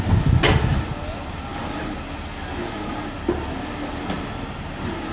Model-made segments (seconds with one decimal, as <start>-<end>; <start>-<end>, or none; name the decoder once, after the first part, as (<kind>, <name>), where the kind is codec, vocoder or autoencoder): none